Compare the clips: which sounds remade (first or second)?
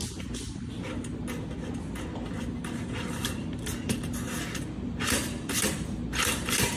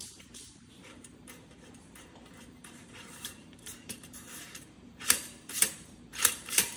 second